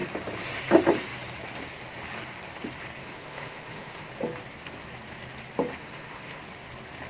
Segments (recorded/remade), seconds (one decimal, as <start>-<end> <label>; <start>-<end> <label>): 0.0-3.0 recorded; 3.0-4.1 remade; 4.1-5.8 recorded; 5.8-6.4 remade; 6.4-7.1 recorded